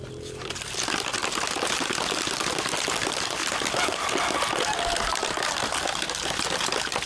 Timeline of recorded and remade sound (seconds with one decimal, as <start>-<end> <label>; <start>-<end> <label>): 0.0-7.1 recorded